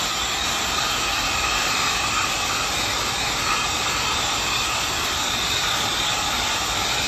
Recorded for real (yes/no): yes